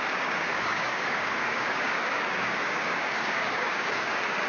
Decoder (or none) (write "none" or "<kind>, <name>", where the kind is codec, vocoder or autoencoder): codec, DAC